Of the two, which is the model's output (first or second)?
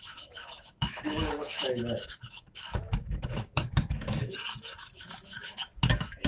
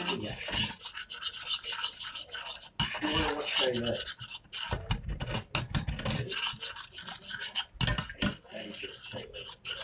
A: first